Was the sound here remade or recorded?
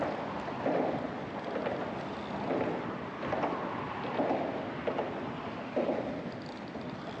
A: recorded